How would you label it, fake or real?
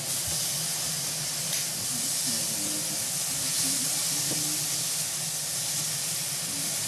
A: real